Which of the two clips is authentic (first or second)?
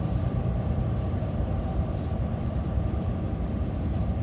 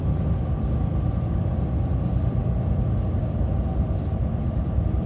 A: second